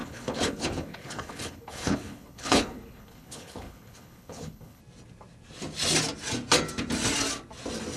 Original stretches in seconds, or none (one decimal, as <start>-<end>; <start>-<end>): 4.8-8.0